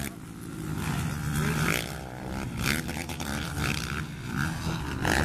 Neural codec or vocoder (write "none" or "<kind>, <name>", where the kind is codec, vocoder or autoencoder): none